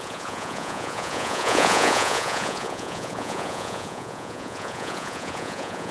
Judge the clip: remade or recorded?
remade